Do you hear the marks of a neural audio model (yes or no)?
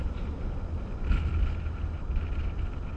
no